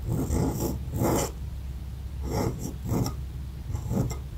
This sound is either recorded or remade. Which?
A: recorded